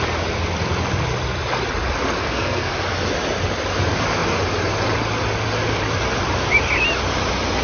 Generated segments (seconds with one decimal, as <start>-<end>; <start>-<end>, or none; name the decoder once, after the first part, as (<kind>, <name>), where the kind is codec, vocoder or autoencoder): 2.2-2.7 (codec, SNAC)